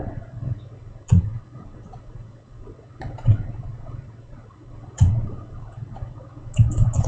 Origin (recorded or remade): remade